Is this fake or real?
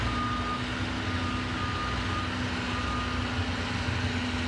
real